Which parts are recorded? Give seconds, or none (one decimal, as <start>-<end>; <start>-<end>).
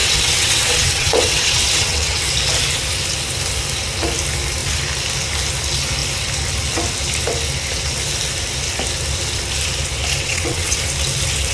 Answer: 2.3-10.2; 10.8-11.5